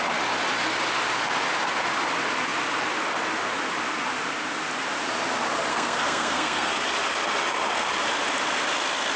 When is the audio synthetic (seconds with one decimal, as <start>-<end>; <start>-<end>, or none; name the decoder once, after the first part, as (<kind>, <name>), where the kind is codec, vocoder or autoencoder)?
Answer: 5.7-6.7 (codec, SNAC)